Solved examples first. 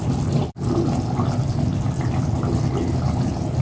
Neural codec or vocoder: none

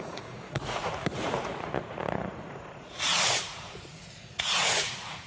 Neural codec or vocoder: vocoder, Vocos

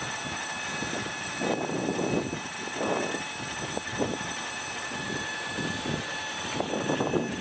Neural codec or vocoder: none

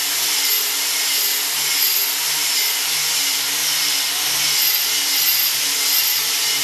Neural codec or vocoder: none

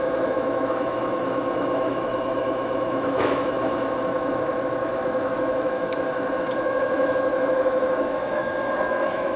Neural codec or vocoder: autoencoder, DAC-VAE